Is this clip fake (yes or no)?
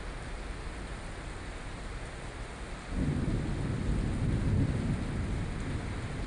no